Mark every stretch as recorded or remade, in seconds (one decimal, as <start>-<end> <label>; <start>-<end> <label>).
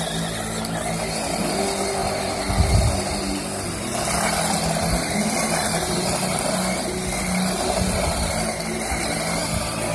0.0-9.9 recorded